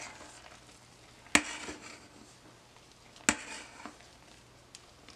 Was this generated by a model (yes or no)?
no